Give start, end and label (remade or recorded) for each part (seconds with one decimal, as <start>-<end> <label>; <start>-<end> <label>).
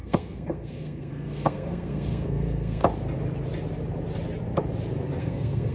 0.0-2.8 remade; 2.8-5.2 recorded; 5.2-5.7 remade